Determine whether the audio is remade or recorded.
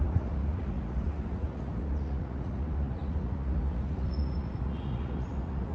remade